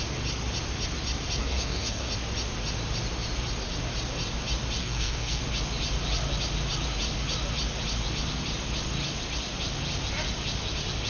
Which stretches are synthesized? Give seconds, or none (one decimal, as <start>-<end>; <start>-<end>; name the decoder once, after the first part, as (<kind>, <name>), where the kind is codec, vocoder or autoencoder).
1.4-2.1 (codec, SNAC); 4.8-5.4

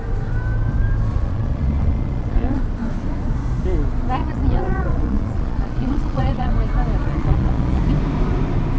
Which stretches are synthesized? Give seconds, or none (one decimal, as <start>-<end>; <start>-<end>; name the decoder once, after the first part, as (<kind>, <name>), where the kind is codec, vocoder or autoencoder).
1.1-2.6 (vocoder, Vocos); 4.2-6.5; 7.0-7.8

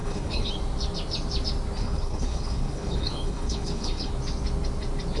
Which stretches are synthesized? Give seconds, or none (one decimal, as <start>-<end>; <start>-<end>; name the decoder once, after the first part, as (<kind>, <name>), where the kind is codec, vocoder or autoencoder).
0.0-0.5 (codec, HILCodec); 1.8-4.1

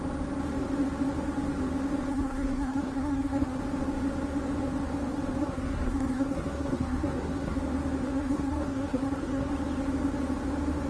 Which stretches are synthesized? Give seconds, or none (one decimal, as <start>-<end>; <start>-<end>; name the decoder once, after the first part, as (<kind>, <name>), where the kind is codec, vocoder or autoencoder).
2.1-3.6 (codec, SNAC); 5.4-7.6; 8.0-9.5

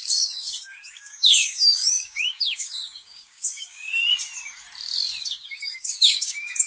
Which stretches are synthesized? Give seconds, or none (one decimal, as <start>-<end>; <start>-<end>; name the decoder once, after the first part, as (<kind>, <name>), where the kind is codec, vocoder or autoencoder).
0.0-3.9 (codec, DAC); 5.2-6.7

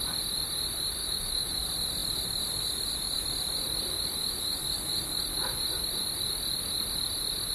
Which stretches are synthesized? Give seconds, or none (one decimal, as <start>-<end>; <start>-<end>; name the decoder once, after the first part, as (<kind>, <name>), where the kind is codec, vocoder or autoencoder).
1.0-1.5 (autoencoder, DAC-VAE)

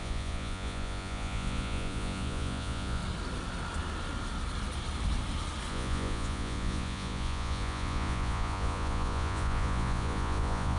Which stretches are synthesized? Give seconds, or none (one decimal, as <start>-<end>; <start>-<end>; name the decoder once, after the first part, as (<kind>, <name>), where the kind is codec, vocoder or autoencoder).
0.0-3.0 (vocoder, Vocos); 5.7-10.8

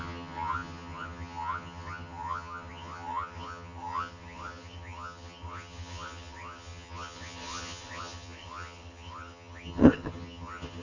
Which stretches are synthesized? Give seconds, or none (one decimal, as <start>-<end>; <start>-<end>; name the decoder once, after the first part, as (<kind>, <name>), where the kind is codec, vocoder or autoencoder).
0.0-10.8 (vocoder, HiFi-GAN)